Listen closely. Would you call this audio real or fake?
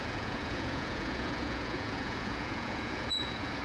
fake